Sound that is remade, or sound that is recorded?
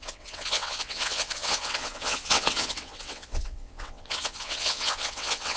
remade